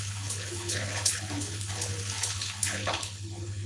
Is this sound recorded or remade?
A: remade